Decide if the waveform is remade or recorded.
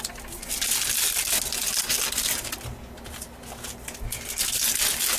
recorded